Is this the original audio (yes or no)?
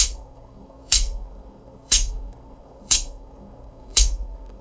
no